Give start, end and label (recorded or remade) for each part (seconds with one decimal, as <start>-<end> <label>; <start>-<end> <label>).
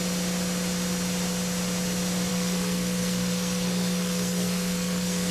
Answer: 0.0-2.3 recorded; 2.3-5.3 remade